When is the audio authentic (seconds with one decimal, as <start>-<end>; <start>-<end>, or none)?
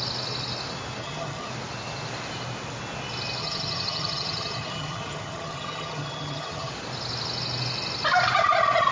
0.0-1.0; 1.5-3.4; 6.7-8.9